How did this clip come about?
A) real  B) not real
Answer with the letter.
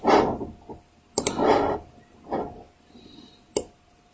A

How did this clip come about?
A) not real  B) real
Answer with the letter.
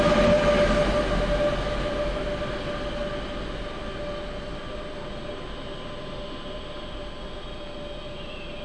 B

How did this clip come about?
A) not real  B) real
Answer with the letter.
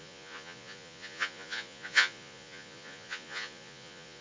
A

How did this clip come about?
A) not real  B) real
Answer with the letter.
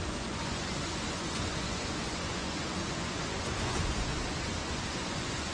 A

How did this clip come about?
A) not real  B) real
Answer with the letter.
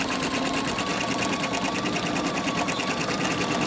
B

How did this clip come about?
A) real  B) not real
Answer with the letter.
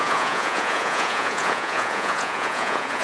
B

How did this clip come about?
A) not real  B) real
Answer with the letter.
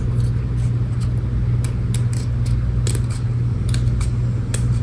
B